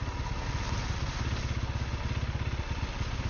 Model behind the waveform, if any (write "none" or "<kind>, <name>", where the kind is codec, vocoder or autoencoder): none